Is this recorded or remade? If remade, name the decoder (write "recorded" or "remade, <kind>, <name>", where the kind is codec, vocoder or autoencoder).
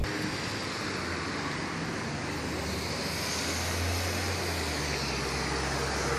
recorded